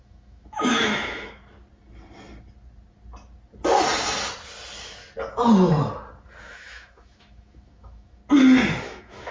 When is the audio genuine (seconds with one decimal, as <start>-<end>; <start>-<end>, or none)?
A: 1.4-6.4; 8.2-8.8